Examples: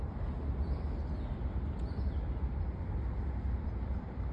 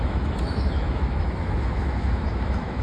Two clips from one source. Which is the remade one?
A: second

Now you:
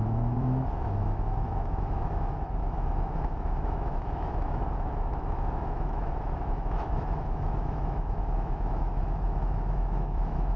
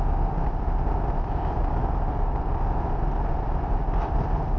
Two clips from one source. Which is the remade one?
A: first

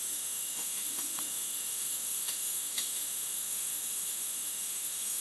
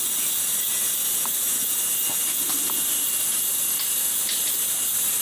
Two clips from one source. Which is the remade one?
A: first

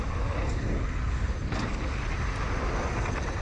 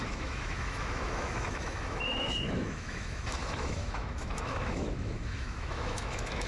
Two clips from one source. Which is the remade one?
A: second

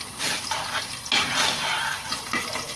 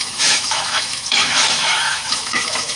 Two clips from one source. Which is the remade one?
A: second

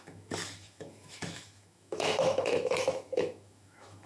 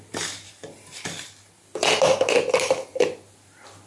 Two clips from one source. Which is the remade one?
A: first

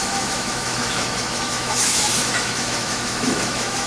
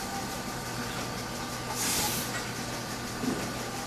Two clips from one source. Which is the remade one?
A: first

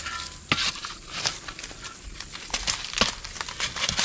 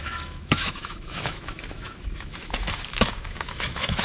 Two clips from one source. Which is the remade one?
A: second